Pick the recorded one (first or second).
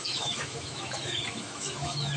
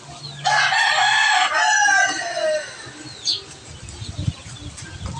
second